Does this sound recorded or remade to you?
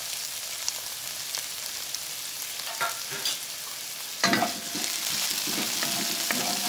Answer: recorded